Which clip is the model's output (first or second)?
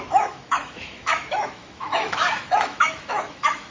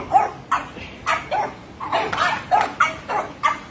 first